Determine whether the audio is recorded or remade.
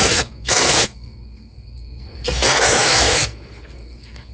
remade